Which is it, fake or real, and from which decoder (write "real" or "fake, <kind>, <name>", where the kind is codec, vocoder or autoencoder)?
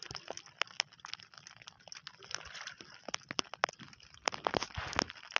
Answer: real